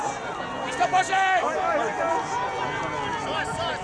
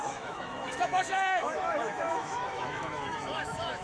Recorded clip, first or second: first